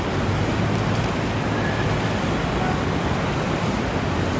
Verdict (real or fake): real